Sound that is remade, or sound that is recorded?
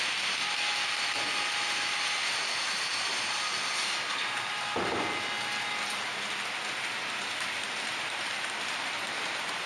recorded